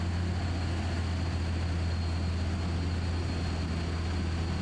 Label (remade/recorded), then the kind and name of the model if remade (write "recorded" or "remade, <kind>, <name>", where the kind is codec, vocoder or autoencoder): recorded